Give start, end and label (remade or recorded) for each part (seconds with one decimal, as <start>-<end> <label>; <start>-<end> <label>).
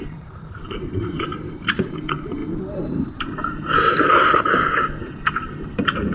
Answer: 0.0-6.1 remade